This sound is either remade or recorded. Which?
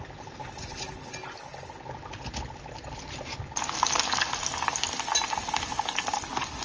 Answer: recorded